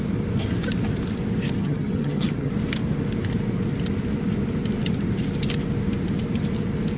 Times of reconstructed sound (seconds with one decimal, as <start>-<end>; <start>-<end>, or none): 1.6-2.5